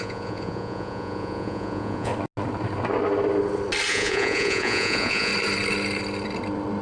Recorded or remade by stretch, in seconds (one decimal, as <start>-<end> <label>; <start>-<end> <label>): 0.0-2.1 remade; 2.1-3.9 recorded; 3.9-5.3 remade; 5.3-6.8 recorded